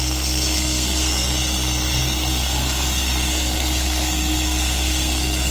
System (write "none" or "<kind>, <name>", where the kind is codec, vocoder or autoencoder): codec, SNAC